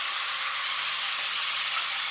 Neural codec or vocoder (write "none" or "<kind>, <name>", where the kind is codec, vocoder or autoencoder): none